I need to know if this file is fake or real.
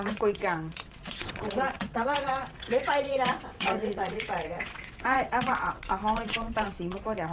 fake